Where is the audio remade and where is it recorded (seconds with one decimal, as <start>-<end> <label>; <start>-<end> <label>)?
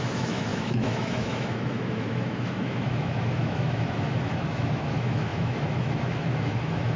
0.0-7.0 remade